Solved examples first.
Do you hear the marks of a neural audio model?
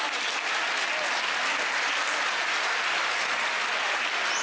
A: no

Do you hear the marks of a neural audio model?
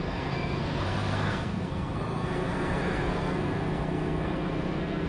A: yes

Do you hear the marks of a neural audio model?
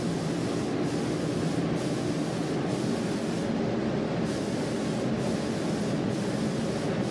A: no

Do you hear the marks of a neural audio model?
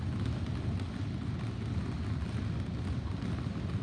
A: no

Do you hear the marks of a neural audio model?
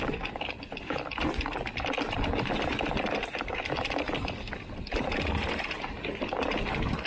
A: no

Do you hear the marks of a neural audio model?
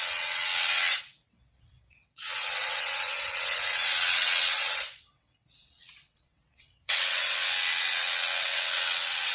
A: yes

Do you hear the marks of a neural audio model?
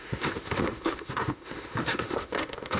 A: yes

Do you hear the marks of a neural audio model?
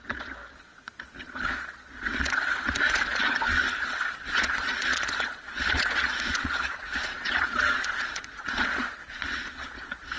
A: yes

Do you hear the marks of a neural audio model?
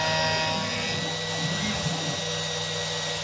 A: no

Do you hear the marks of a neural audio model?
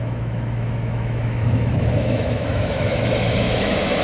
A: yes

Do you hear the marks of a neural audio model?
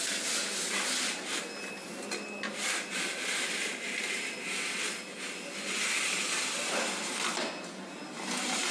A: no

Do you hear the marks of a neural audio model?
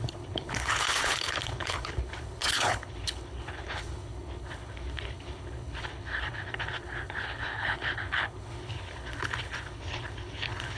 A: yes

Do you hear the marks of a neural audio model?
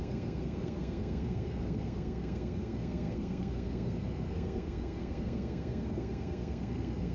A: yes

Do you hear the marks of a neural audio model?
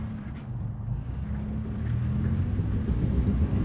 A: no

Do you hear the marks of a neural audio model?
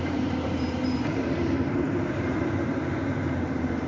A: yes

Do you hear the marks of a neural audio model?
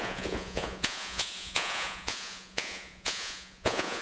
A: yes